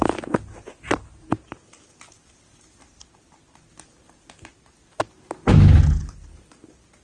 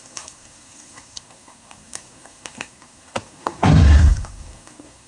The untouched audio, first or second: first